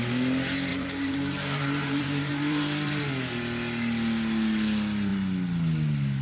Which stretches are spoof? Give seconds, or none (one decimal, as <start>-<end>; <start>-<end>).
0.7-3.1